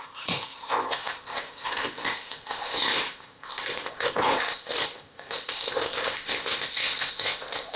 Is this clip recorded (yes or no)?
no